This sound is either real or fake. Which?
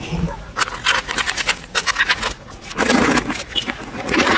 fake